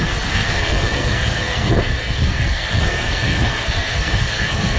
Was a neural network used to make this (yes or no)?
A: yes